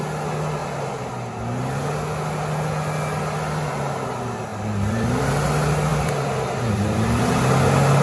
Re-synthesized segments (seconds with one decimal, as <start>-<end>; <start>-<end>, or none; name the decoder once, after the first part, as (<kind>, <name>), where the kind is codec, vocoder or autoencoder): 4.5-5.2 (vocoder, BigVGAN v2); 5.9-7.2